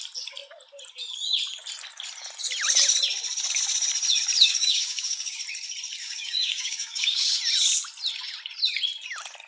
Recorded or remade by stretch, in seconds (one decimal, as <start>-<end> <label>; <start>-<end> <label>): 0.0-4.4 recorded; 4.4-5.4 remade; 5.4-6.0 recorded; 6.0-7.4 remade; 7.4-9.5 recorded